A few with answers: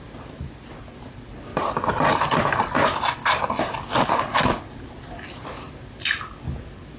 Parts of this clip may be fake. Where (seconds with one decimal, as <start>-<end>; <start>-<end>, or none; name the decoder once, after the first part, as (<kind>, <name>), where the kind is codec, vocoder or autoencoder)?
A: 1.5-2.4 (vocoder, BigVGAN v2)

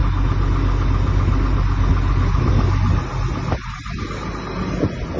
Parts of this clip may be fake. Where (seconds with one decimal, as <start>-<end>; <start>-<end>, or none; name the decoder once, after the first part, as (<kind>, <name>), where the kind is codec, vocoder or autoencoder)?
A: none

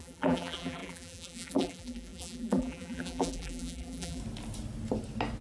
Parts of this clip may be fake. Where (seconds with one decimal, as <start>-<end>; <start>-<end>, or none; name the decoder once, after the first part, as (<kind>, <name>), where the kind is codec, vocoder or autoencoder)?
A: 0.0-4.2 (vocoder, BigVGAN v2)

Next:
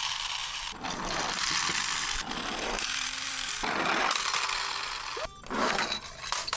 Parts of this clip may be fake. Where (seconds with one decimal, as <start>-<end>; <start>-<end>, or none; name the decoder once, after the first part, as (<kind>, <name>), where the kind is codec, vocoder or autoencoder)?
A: 0.4-1.4 (vocoder, BigVGAN v2); 1.8-4.1